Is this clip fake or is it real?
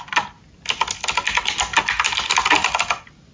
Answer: real